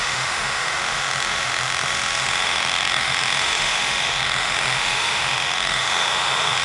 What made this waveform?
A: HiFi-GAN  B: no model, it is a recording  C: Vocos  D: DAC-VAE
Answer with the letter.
D